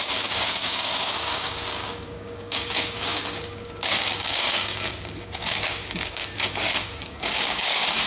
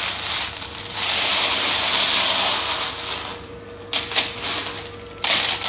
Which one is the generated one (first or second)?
first